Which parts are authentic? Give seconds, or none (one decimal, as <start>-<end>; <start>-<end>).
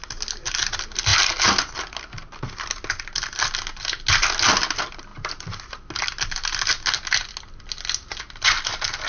0.0-9.1